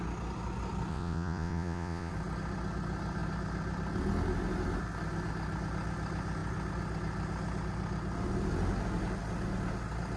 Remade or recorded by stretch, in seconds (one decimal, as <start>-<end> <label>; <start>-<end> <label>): 0.0-0.9 recorded; 0.9-2.1 remade; 2.1-10.2 recorded